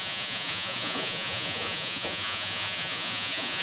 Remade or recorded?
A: remade